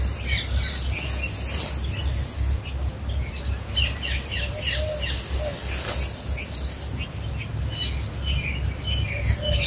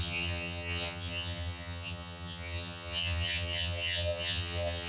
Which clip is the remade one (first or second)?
second